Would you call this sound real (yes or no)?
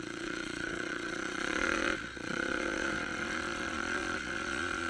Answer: no